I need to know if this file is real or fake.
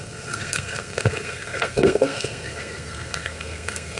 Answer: fake